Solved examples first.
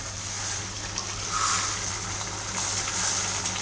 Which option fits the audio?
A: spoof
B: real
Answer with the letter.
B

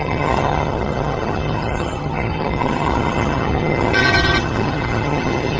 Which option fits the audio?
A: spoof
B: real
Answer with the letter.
A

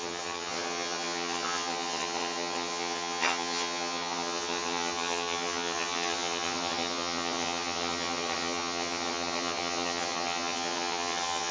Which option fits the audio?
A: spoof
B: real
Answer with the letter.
A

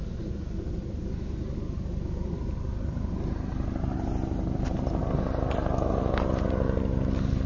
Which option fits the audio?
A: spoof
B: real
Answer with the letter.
B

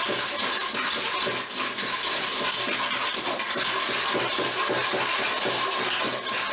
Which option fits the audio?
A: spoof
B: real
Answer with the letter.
B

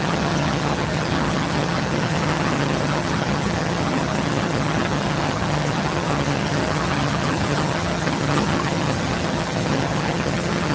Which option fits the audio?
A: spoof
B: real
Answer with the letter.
A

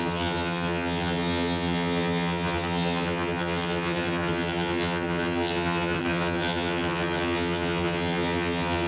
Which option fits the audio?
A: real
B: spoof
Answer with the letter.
B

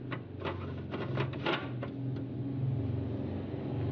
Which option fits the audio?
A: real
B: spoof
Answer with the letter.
A